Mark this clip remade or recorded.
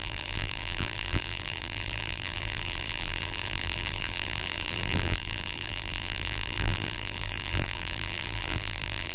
remade